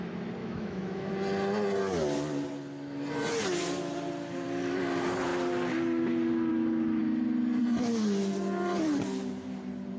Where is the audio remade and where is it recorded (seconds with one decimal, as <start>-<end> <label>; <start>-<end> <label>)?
0.0-0.4 recorded; 0.4-1.1 remade; 1.1-10.0 recorded